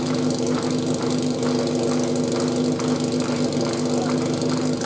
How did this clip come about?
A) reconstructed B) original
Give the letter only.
B